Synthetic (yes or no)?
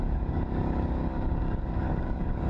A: yes